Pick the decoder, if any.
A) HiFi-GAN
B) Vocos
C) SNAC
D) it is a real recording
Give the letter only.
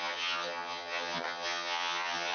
A